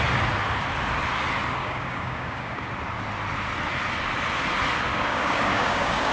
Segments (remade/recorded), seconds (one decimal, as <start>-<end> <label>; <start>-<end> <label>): 0.0-1.6 recorded; 1.6-2.7 remade; 2.7-4.9 recorded; 4.9-6.1 remade